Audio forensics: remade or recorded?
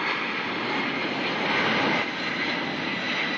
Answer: recorded